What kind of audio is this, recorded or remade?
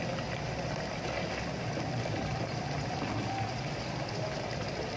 recorded